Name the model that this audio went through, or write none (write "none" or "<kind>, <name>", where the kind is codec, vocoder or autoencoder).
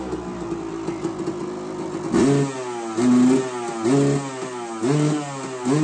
none